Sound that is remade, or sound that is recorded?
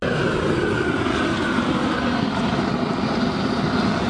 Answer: recorded